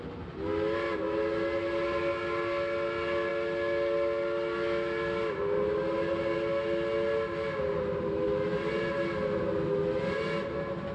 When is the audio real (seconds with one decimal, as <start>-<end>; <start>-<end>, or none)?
0.0-10.9